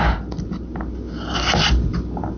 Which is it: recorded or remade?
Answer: recorded